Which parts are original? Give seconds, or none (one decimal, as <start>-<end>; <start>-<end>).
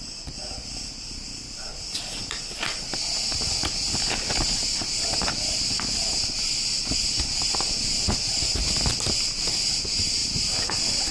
0.0-10.2